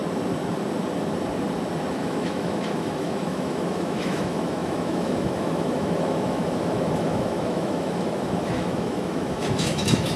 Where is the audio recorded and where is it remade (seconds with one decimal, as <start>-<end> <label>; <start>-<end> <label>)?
0.0-1.9 recorded; 1.9-10.2 remade